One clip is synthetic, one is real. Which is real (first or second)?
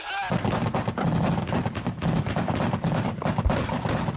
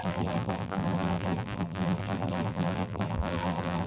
first